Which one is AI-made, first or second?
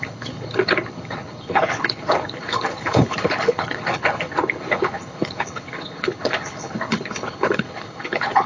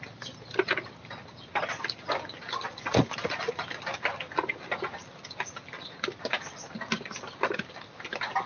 first